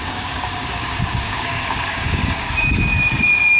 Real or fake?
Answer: fake